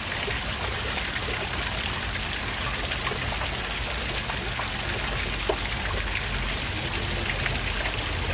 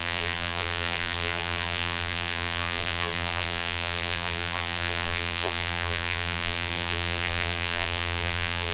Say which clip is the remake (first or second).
second